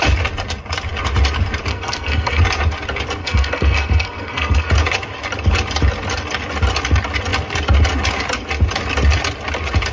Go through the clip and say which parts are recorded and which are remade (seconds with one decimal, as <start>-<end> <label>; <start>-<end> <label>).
0.0-1.7 recorded; 1.7-2.4 remade; 2.4-3.2 recorded; 3.2-4.7 remade; 4.7-9.9 recorded